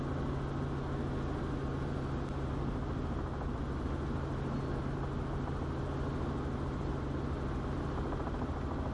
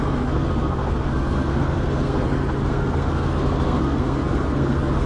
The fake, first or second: second